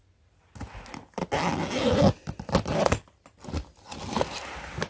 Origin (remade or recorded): recorded